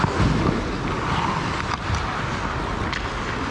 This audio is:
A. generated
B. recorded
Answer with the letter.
B